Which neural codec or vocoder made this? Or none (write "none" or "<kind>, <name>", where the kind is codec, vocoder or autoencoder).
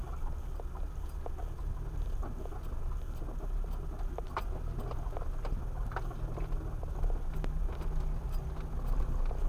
none